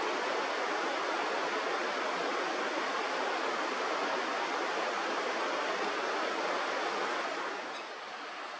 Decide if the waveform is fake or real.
real